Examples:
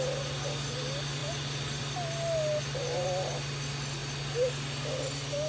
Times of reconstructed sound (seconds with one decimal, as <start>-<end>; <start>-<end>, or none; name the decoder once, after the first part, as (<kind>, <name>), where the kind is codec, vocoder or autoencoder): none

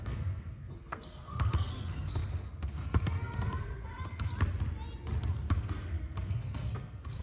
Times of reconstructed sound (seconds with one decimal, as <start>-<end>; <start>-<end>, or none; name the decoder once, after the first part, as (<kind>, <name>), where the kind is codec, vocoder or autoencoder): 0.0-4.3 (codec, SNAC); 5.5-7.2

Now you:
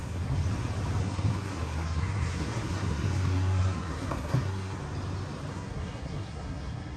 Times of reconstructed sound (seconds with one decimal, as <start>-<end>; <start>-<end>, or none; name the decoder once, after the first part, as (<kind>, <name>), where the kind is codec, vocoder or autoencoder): 0.0-0.4 (codec, SNAC); 1.0-4.8; 5.5-7.0